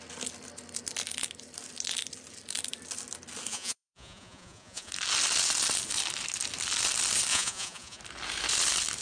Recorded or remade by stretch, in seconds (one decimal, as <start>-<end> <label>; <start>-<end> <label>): 0.0-3.5 recorded; 3.5-4.9 remade; 4.9-7.3 recorded; 7.3-8.0 remade; 8.0-9.0 recorded